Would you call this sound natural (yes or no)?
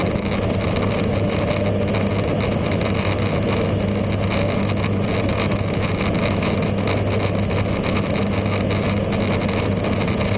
yes